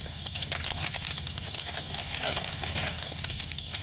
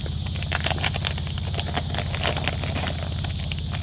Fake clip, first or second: first